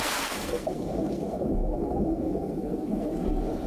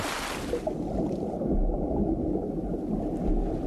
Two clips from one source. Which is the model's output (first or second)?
first